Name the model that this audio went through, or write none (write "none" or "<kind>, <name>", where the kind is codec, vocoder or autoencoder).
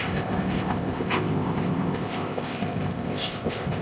codec, ZipCodec